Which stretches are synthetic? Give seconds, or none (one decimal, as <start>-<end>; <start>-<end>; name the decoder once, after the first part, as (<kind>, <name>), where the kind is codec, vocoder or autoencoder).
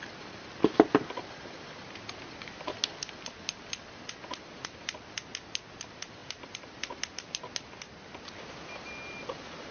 none